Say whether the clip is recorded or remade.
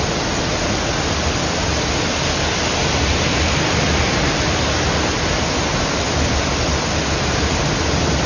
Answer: recorded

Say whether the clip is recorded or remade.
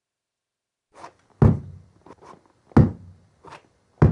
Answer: recorded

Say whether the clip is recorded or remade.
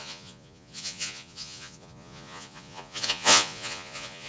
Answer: remade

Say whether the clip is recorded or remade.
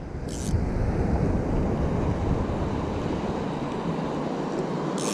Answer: recorded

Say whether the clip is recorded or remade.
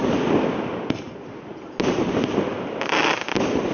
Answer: recorded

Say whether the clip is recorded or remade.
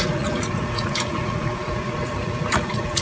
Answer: remade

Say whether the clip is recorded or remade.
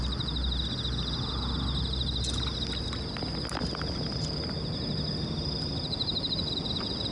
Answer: recorded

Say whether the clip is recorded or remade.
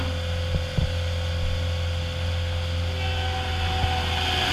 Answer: recorded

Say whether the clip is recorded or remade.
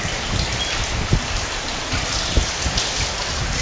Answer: recorded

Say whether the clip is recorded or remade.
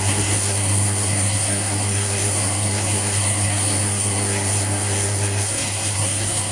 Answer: remade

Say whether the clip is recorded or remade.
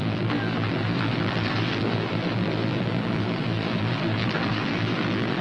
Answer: remade